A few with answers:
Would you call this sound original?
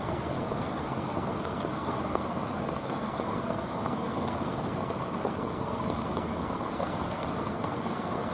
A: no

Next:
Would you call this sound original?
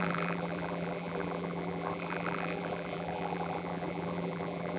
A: no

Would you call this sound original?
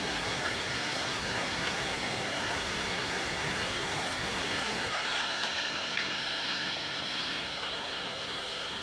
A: no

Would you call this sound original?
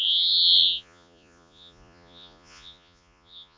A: no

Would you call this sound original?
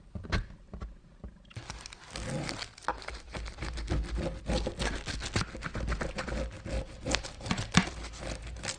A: yes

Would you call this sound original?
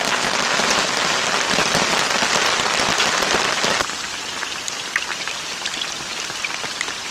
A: no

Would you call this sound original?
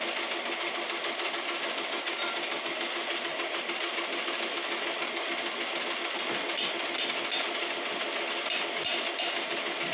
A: yes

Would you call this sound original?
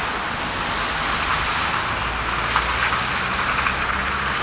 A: yes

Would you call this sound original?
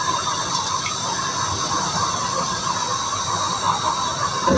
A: yes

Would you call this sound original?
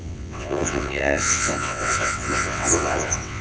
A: no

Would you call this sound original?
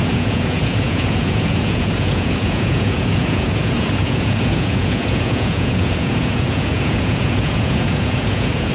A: no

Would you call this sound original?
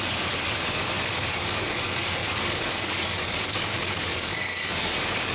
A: no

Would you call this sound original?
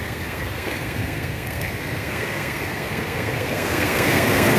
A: no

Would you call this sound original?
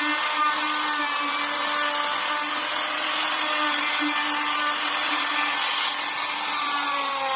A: yes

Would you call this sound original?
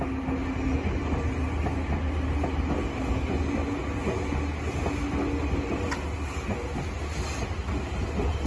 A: yes